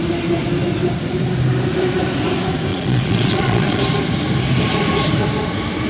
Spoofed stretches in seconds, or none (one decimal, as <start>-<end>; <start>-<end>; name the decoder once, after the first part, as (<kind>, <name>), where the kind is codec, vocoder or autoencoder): 2.7-3.8 (vocoder, Vocos)